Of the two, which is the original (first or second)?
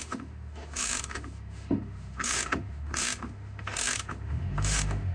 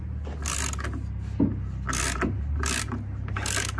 second